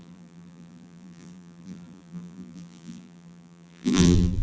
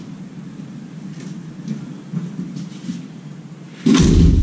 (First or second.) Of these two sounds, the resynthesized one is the first